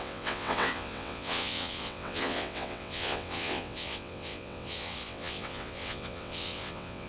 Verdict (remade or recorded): remade